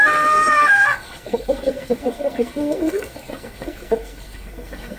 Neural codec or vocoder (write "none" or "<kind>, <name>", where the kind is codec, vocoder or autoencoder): codec, SNAC